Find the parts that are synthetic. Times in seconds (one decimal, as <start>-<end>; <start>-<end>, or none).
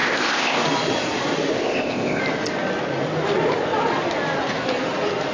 0.0-0.6; 1.5-2.2